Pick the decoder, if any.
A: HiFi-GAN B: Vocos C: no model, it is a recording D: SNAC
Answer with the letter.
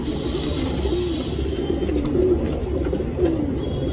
C